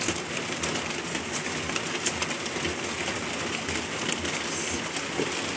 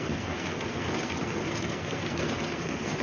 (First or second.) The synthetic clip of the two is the second